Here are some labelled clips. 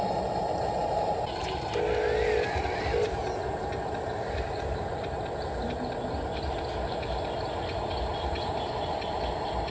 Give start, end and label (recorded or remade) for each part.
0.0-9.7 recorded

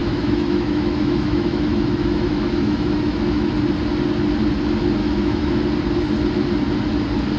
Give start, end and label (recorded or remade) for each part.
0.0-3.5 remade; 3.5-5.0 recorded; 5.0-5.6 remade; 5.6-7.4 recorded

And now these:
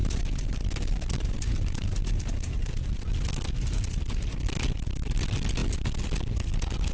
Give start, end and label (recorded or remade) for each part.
0.0-2.9 remade; 2.9-6.9 recorded